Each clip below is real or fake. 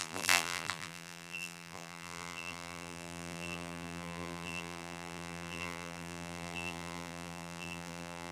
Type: fake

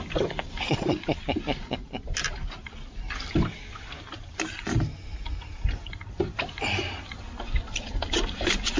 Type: real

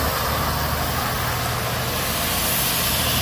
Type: real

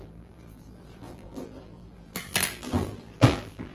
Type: fake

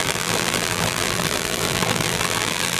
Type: fake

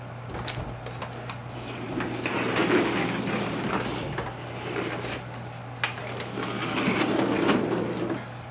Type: real